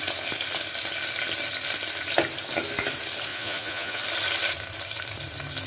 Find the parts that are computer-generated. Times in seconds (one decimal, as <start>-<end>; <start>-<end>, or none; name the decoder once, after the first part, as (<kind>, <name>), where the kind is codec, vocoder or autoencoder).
3.3-4.0 (vocoder, Vocos)

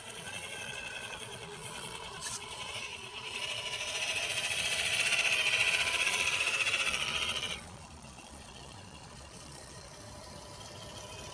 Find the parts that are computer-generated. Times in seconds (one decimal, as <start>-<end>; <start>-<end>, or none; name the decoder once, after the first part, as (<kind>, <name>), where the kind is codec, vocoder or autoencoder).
0.0-4.9 (vocoder, Vocos); 5.5-9.9

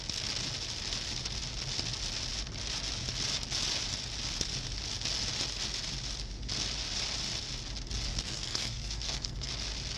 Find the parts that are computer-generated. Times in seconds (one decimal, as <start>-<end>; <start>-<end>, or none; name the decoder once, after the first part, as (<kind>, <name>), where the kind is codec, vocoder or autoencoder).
8.1-9.5 (codec, SNAC)

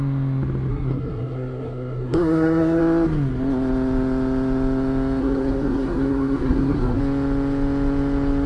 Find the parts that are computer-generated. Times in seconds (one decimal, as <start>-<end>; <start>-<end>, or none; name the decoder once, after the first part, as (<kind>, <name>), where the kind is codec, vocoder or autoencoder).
0.7-2.8 (codec, SNAC); 5.2-7.0

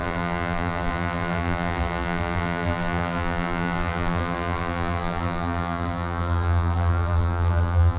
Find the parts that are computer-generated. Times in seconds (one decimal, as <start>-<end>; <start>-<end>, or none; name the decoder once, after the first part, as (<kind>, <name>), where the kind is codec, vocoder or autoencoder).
0.0-8.0 (vocoder, BigVGAN v2)

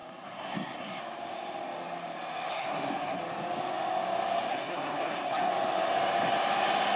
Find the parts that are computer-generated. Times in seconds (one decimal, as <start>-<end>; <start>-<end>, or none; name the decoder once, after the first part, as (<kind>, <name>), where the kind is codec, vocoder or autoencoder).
0.0-1.0 (codec, SNAC); 2.5-3.2; 4.5-5.5

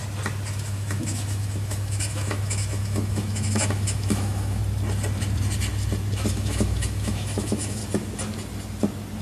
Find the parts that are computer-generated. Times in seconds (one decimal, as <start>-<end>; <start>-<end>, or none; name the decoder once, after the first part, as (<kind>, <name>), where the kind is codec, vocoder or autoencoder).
0.5-4.6 (autoencoder, DAC-VAE); 6.3-7.8